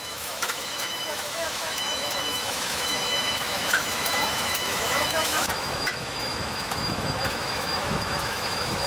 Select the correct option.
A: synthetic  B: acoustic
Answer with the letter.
A